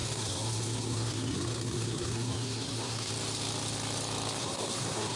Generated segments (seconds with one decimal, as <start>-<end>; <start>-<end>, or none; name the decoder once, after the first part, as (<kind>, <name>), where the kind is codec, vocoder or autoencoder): 0.0-3.1 (codec, SNAC); 4.4-5.2